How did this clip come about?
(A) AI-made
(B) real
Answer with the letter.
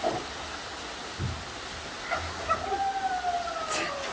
B